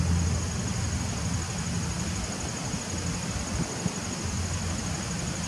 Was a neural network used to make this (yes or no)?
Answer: no